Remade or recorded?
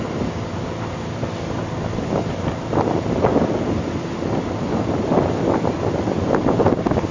recorded